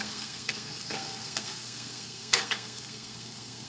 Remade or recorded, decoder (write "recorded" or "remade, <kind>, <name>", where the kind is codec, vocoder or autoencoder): remade, codec, SNAC